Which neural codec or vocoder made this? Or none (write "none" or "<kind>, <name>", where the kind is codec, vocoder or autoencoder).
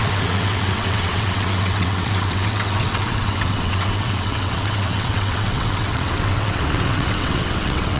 vocoder, WaveNeXt